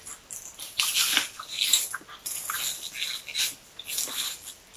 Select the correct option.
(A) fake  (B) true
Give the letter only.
B